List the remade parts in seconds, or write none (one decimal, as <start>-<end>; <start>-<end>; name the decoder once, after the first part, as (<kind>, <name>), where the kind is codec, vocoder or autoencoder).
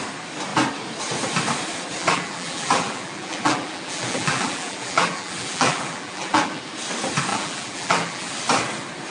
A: 2.0-6.6 (vocoder, BigVGAN v2); 7.3-8.3